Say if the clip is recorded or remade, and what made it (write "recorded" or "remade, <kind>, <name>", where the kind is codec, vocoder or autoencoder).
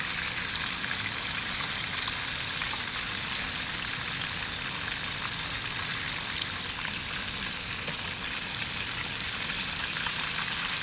recorded